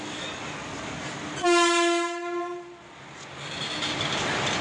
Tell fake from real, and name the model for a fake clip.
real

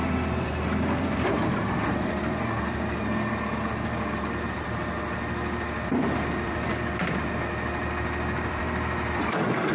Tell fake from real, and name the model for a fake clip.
fake, vocoder, BigVGAN v2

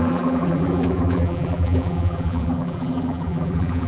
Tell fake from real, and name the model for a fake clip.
fake, vocoder, BigVGAN v2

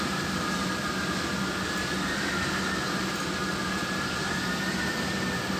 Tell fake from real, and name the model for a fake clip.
real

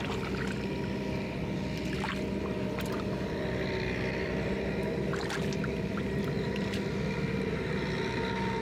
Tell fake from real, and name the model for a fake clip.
real